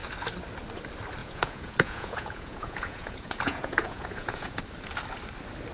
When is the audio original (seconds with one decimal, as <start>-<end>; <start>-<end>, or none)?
0.0-1.2; 4.6-5.7